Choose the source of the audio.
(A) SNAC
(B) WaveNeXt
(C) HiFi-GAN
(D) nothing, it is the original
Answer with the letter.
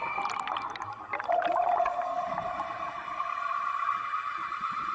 D